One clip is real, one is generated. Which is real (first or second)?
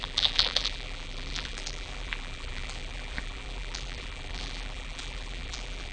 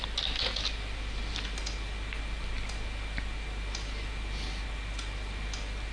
second